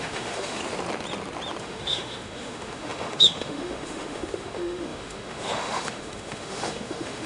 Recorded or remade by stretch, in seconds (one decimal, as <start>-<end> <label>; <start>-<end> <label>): 0.0-0.6 remade; 0.6-1.6 recorded; 1.6-7.3 remade